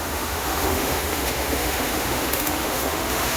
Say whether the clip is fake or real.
fake